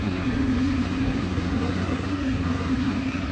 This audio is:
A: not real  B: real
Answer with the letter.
A